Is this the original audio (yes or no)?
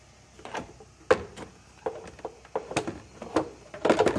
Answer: yes